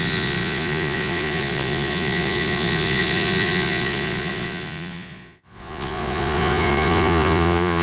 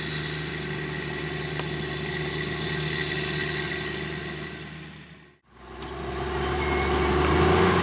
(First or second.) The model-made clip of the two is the first